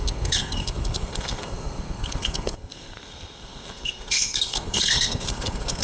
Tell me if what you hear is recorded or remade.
remade